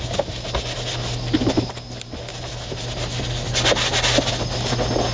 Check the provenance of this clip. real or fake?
real